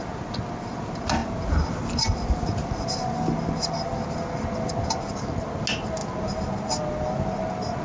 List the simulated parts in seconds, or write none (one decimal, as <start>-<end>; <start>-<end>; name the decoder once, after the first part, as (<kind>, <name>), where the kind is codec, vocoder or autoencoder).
none